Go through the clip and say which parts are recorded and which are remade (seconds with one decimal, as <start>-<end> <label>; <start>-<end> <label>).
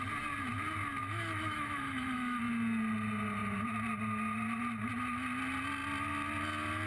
0.0-1.0 recorded; 1.0-2.4 remade; 2.4-6.9 recorded